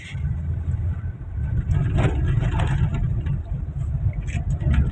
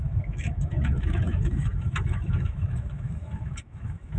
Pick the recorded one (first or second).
first